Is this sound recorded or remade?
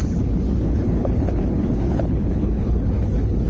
remade